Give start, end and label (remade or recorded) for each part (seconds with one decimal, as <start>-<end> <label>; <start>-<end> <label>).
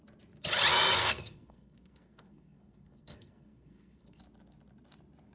0.0-1.0 recorded; 1.0-4.2 remade; 4.2-5.3 recorded